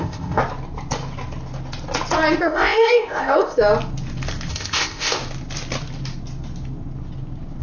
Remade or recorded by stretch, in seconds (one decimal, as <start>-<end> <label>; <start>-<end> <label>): 0.0-0.4 remade; 0.4-2.4 recorded; 2.4-3.6 remade; 3.6-4.5 recorded; 4.5-5.2 remade; 5.2-7.6 recorded